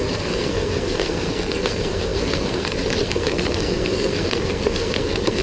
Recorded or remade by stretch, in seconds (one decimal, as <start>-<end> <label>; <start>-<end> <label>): 0.0-5.4 remade